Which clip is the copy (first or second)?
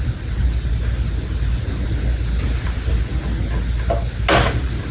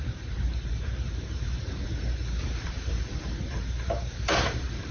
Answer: second